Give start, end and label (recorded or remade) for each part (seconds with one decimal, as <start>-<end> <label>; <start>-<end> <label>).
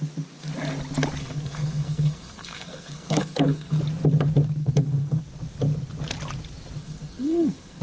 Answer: 0.0-1.2 recorded; 1.2-3.8 remade; 3.8-4.6 recorded; 4.6-5.2 remade; 5.2-6.8 recorded; 6.8-7.8 remade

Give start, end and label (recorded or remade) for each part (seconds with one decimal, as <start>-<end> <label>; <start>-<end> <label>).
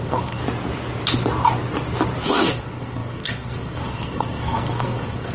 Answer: 0.0-0.4 remade; 0.4-2.2 recorded; 2.2-5.3 remade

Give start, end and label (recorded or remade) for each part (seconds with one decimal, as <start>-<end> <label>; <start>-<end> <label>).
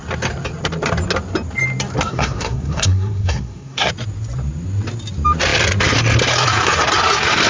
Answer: 0.0-2.1 recorded; 2.1-3.9 remade; 3.9-7.5 recorded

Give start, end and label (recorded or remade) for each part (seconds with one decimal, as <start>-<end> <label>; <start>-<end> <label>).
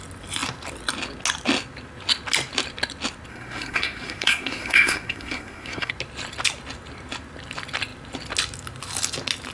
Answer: 0.0-3.3 recorded; 3.3-5.9 remade; 5.9-9.5 recorded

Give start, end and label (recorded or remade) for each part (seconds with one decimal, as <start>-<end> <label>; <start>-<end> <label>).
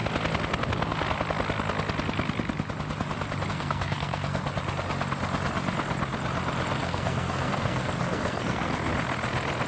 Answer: 0.0-3.5 recorded; 3.5-4.4 remade; 4.4-6.8 recorded; 6.8-8.9 remade; 8.9-9.7 recorded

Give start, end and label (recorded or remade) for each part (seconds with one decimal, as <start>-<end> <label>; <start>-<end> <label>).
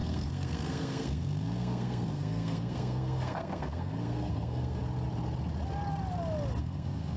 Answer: 0.0-4.8 remade; 4.8-6.6 recorded; 6.6-7.2 remade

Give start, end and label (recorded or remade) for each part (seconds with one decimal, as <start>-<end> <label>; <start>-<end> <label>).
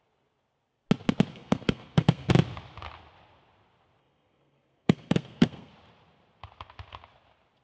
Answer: 0.0-1.3 recorded; 1.3-2.3 remade; 2.3-4.0 recorded; 4.0-5.7 remade; 5.7-7.6 recorded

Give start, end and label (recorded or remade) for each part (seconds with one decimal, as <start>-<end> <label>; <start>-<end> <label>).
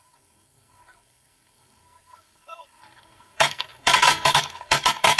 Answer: 0.0-5.2 remade